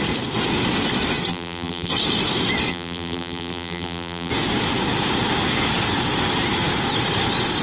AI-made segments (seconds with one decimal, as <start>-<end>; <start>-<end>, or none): 1.3-1.9; 2.7-4.3